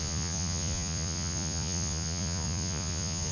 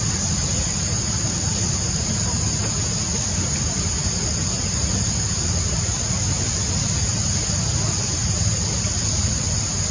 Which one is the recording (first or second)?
second